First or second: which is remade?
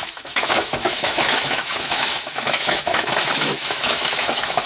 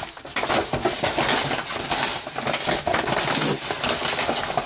first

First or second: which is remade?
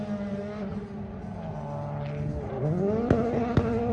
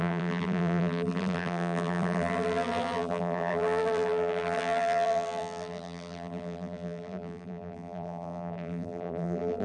second